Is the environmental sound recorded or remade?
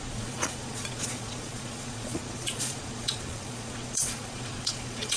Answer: remade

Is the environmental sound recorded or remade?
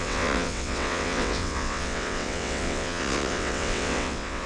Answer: remade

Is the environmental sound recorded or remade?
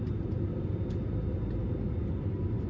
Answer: recorded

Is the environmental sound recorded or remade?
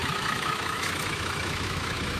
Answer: remade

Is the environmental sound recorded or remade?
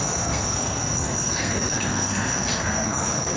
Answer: remade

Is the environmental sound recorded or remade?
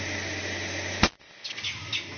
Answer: recorded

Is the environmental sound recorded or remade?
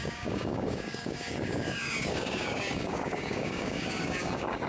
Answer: remade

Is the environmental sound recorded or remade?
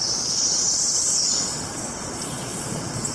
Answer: remade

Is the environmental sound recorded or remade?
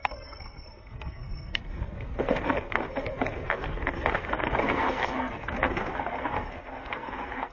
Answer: remade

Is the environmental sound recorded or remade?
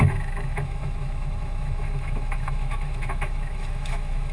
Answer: remade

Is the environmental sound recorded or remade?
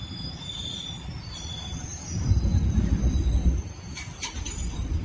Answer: remade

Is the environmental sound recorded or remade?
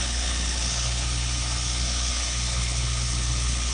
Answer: remade